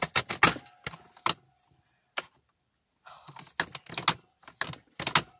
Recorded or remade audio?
recorded